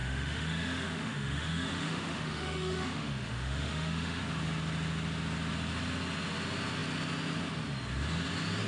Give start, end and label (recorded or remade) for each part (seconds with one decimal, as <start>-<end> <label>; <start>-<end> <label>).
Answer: 0.0-4.2 remade; 4.2-8.7 recorded